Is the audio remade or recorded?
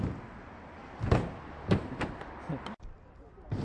recorded